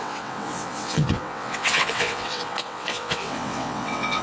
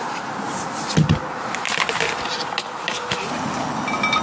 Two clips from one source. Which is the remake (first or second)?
first